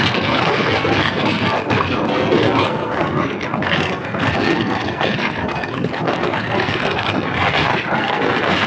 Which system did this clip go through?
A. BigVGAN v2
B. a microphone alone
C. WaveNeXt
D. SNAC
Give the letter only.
D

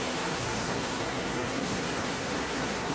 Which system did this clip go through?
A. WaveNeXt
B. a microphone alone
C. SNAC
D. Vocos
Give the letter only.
C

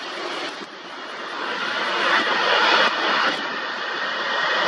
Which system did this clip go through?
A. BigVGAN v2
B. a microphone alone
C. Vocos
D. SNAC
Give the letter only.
B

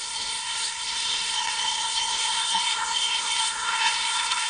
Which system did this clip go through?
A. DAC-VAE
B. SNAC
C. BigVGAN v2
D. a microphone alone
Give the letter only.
B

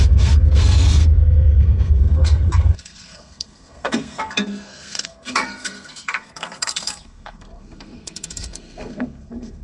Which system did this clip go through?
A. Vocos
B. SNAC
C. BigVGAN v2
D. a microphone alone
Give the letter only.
B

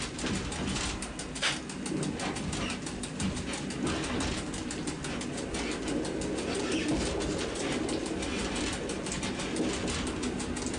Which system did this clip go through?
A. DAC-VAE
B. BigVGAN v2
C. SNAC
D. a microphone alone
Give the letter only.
D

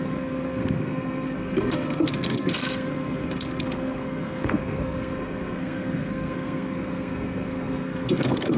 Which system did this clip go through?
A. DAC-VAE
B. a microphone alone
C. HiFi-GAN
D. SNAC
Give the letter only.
D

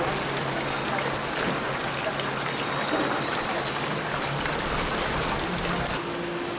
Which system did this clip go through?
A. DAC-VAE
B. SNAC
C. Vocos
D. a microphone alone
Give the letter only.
D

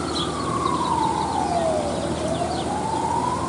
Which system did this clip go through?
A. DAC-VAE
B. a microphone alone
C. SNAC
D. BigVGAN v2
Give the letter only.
B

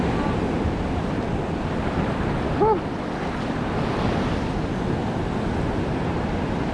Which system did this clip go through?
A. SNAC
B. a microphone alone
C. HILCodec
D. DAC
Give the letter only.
B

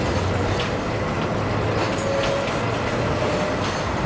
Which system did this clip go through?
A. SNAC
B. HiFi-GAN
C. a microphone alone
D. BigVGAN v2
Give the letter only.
C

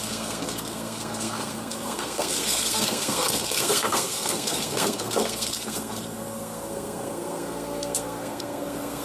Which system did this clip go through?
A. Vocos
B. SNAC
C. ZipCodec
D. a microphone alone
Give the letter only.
B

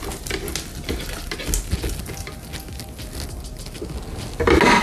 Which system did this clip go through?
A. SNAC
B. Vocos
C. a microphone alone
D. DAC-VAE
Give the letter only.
C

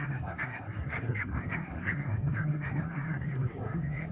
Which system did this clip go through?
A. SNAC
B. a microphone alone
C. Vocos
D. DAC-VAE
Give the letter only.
A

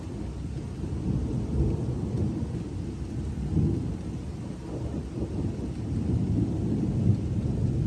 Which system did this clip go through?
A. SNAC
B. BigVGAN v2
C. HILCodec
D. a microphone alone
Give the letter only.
D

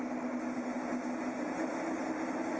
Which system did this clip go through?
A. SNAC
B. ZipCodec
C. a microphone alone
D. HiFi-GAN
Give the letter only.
C